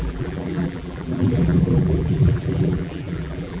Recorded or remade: remade